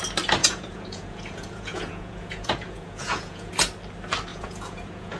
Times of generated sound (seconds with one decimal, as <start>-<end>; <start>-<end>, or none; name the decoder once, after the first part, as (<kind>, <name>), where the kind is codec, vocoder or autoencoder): 0.4-3.5 (vocoder, Vocos); 4.3-5.2